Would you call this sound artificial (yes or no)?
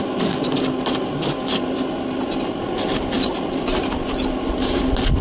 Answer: no